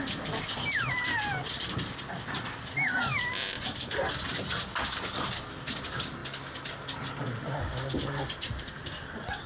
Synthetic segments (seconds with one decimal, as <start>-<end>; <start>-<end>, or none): none